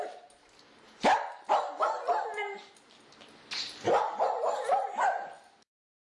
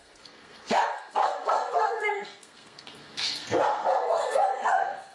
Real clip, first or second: first